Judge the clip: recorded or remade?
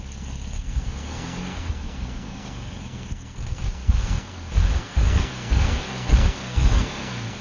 remade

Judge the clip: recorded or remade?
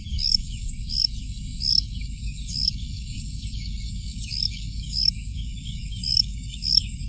remade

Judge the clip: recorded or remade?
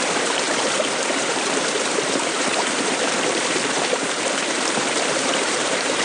remade